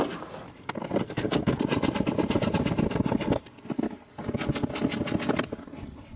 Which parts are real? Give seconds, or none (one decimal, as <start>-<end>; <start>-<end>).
0.0-1.0; 1.6-6.2

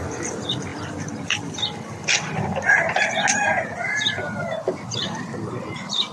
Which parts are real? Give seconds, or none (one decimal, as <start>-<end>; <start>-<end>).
0.0-6.1

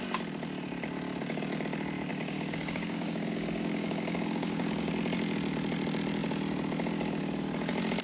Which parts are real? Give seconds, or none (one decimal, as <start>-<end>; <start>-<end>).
0.0-2.1; 4.9-8.0

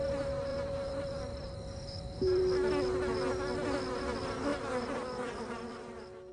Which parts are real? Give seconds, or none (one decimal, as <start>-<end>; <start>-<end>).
0.0-0.5; 2.4-6.3

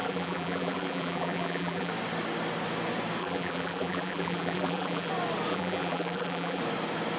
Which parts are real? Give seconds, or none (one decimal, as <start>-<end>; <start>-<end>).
1.9-3.2; 5.1-5.5; 6.6-7.2

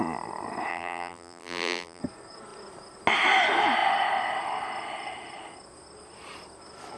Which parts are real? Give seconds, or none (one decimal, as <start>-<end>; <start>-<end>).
0.0-0.7; 2.0-7.0

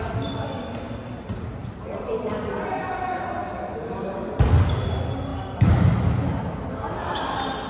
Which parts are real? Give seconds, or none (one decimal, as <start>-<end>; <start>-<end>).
0.0-1.6; 2.3-7.7

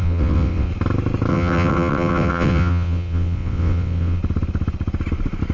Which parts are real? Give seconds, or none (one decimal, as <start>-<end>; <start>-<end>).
0.7-1.3; 4.2-5.5